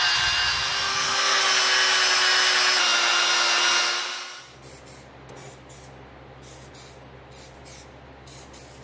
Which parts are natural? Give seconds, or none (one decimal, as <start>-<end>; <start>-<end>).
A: 0.0-0.9; 1.4-8.8